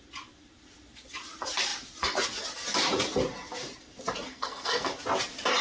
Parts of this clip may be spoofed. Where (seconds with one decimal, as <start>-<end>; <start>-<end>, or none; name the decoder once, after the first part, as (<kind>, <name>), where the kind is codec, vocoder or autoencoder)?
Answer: 4.3-4.9 (codec, SNAC)